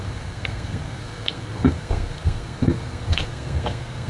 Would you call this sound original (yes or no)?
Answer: no